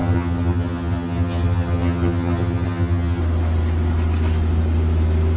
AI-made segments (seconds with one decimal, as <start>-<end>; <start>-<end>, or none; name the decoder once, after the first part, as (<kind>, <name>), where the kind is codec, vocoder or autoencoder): 0.0-3.2 (vocoder, HiFi-GAN)